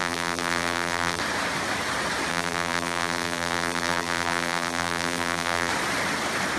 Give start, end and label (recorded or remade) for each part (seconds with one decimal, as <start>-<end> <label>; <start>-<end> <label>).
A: 0.0-1.2 remade; 1.2-2.3 recorded; 2.3-5.7 remade; 5.7-6.6 recorded